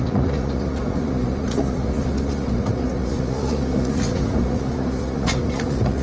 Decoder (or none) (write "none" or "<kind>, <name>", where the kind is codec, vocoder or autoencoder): vocoder, Vocos